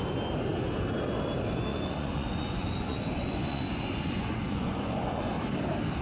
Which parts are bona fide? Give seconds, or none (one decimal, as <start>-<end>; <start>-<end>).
0.0-1.7; 5.3-6.0